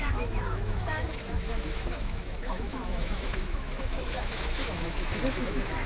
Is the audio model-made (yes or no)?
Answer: yes